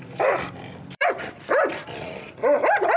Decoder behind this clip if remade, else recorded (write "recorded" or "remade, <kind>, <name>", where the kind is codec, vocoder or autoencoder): remade, vocoder, BigVGAN v2